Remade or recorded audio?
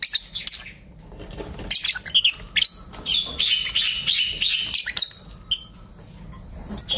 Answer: recorded